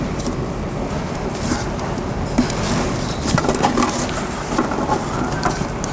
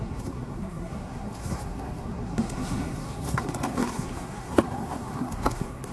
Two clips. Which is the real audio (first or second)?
first